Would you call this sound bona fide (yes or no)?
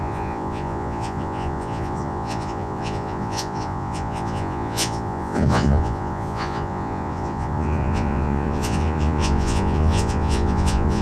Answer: no